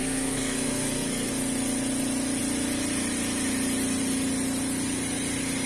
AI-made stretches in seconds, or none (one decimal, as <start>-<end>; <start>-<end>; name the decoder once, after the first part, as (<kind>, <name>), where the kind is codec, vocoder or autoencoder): 0.0-1.3 (codec, SNAC)